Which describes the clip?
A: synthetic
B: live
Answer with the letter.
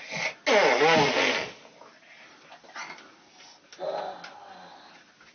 B